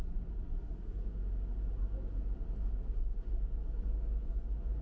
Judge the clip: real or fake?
real